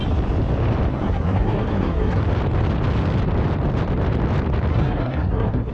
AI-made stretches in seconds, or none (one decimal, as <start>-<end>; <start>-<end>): 0.9-2.2; 4.7-5.7